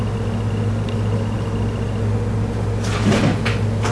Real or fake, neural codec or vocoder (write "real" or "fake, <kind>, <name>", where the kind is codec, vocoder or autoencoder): real